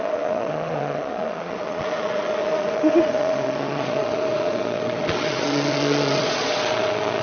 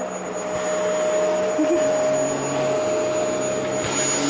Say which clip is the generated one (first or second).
first